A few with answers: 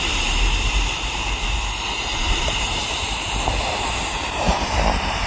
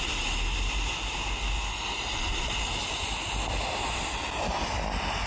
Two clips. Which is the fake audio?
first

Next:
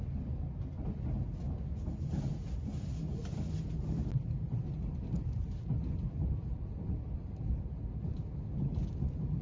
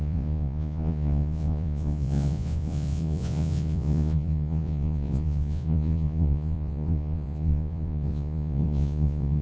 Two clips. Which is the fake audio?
second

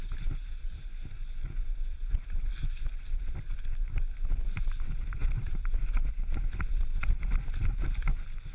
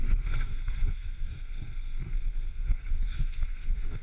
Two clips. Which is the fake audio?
second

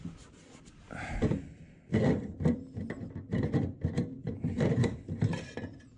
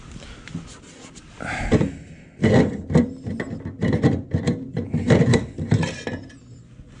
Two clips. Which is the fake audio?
first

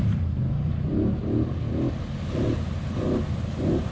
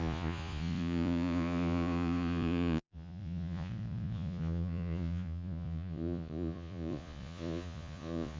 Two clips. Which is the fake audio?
second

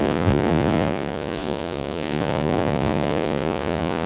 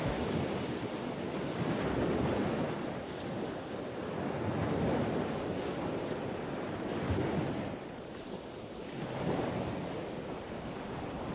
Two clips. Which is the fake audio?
first